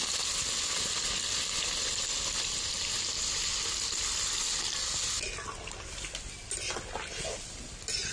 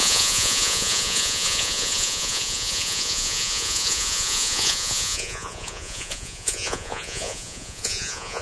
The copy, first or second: second